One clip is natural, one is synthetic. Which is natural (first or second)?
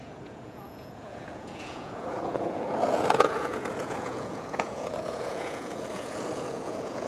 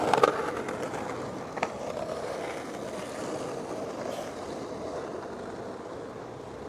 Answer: second